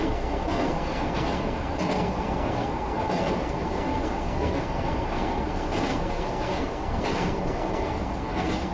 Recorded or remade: remade